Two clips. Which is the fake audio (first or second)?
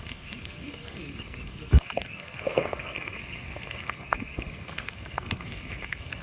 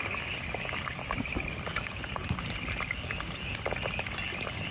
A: first